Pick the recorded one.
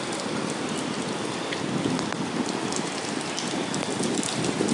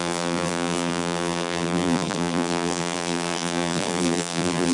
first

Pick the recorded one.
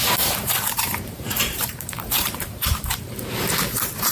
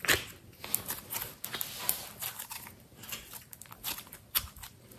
second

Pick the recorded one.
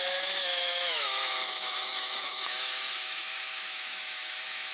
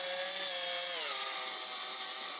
second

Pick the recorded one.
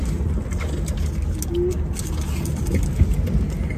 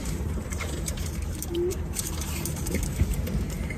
first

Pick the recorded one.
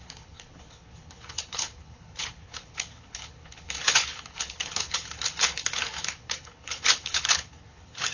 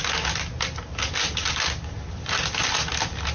second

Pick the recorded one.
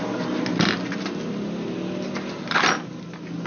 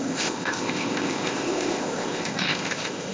first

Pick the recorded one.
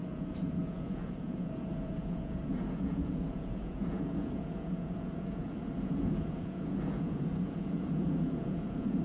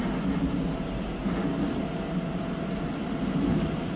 second